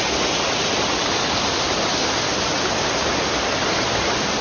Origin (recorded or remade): recorded